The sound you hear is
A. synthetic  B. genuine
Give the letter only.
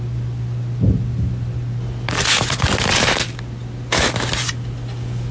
B